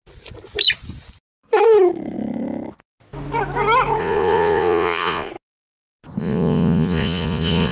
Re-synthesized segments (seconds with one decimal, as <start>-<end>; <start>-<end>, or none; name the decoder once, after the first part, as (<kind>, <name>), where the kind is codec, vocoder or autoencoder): 4.0-5.3 (vocoder, Vocos); 6.2-7.7